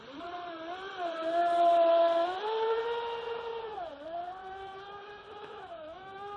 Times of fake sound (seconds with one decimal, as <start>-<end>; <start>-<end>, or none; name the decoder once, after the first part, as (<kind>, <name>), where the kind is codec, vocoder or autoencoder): 4.4-6.4 (autoencoder, DAC-VAE)